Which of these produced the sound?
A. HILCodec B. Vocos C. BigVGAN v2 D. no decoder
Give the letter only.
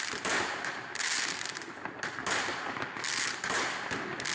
D